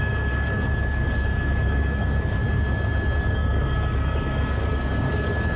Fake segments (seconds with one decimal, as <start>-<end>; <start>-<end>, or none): 0.0-2.4; 3.2-5.6

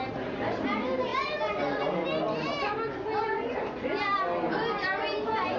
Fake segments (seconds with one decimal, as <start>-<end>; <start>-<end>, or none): none

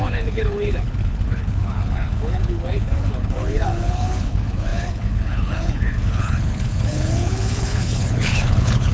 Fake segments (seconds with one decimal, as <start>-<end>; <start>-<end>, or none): 0.0-8.9

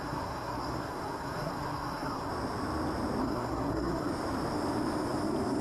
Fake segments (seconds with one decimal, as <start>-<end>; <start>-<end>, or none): 0.0-2.3; 3.2-4.1

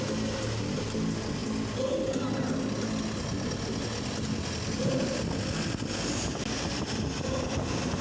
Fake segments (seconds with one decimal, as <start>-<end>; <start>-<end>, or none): none